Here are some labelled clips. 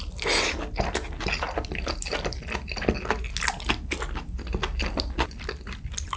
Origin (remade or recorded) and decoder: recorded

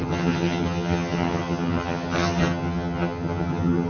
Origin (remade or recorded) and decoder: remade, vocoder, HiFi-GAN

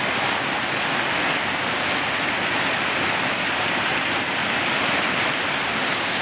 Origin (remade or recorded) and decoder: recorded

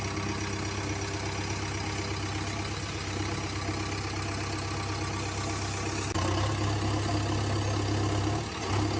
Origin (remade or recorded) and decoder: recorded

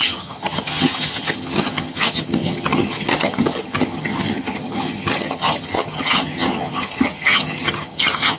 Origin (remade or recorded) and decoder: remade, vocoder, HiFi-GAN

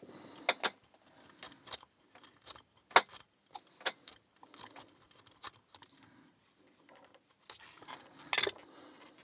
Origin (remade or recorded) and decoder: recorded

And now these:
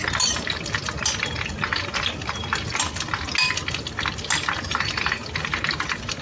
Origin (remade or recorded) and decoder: recorded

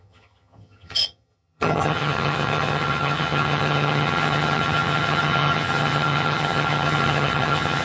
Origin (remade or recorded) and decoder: remade, vocoder, HiFi-GAN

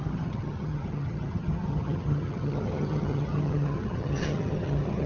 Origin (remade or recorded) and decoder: remade, vocoder, HiFi-GAN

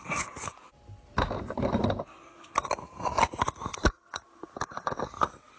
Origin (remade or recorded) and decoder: recorded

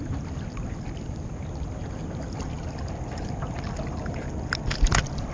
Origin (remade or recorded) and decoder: recorded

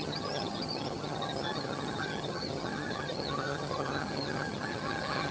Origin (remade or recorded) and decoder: remade, vocoder, HiFi-GAN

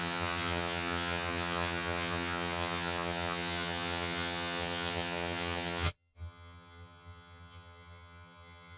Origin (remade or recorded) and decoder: remade, vocoder, HiFi-GAN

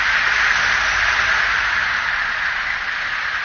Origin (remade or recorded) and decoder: recorded